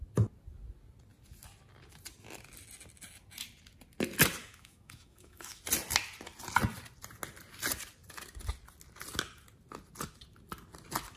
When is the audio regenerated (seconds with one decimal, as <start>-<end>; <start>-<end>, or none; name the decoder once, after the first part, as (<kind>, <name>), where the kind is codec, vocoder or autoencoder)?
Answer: 4.4-5.6 (autoencoder, DAC-VAE)

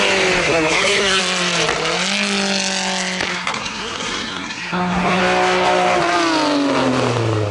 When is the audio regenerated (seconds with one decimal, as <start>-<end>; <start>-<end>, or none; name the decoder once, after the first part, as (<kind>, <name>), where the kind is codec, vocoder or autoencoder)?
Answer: 0.4-1.2 (codec, SNAC); 3.3-5.2

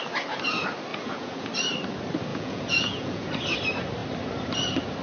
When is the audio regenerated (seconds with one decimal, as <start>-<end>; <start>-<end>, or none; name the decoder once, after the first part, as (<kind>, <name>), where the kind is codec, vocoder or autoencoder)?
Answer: 0.9-1.5 (vocoder, Vocos); 2.3-3.3